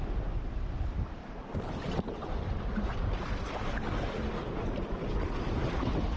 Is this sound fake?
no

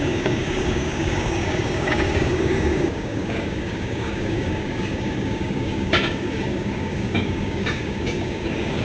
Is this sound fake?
yes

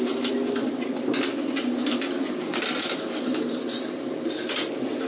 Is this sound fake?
no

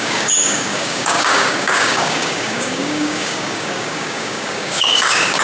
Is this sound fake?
yes